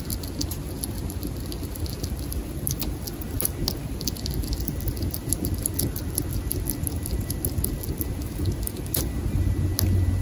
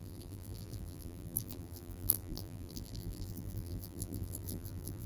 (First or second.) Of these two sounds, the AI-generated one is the second